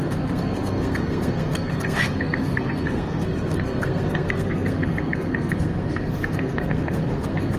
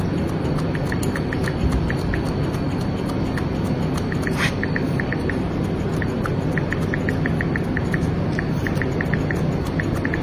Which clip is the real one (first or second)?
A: second